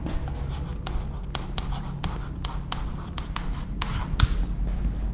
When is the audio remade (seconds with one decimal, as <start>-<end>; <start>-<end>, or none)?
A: 0.7-3.8